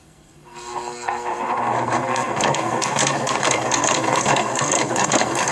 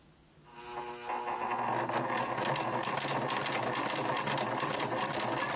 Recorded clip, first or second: second